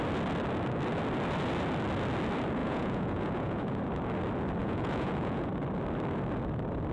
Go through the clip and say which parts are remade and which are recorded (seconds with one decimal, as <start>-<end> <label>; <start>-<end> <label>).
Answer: 0.0-2.6 recorded; 2.6-3.8 remade; 3.8-4.6 recorded; 4.6-5.4 remade; 5.4-6.9 recorded